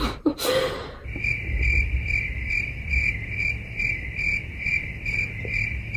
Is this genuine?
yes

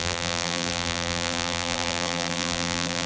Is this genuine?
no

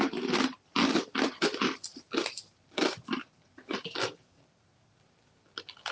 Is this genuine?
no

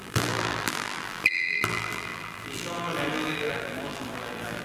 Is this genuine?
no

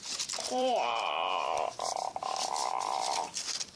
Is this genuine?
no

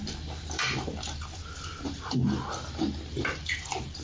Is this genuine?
no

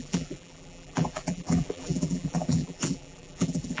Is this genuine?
no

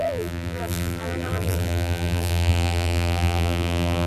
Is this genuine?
no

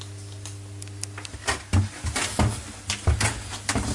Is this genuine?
yes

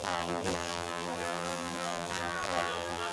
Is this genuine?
no